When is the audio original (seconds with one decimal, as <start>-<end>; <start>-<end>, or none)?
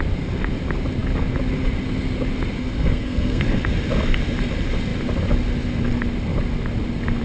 0.0-2.6; 3.4-7.2